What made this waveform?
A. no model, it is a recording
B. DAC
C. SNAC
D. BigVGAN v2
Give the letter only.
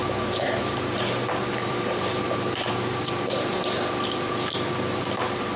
D